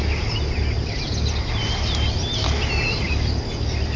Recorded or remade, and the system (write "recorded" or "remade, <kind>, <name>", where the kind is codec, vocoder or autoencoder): recorded